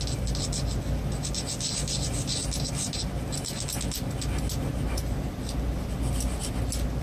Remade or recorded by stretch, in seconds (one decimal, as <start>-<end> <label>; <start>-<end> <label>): 0.0-7.0 recorded